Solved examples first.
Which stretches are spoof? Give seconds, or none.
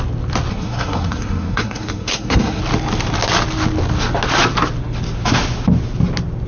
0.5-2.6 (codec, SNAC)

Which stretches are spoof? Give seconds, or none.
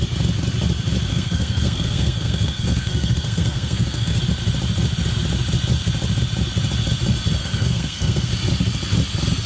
1.1-4.2 (codec, SNAC); 7.4-8.3